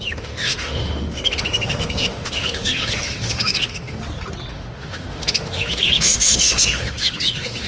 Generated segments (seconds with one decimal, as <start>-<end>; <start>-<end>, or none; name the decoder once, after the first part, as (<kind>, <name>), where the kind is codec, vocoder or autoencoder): 0.0-4.0 (autoencoder, DAC-VAE); 4.5-7.7

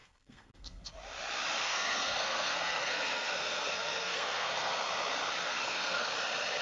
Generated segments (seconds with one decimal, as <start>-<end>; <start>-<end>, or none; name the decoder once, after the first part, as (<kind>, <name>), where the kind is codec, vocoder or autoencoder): 0.0-0.9 (codec, SNAC); 1.6-4.8; 5.4-6.1

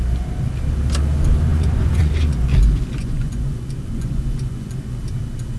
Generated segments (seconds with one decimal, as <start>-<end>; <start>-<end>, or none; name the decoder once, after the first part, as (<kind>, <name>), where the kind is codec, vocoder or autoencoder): 1.5-2.6 (vocoder, Vocos); 3.0-5.0

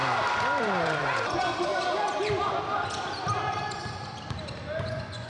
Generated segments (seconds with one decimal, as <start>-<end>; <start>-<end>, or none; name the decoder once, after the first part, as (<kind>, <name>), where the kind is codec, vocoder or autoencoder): 0.6-1.7 (vocoder, Vocos); 4.8-5.3